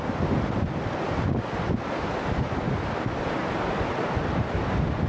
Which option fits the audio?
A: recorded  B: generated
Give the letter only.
A